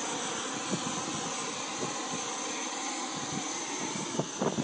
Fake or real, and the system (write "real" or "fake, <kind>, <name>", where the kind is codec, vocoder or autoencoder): real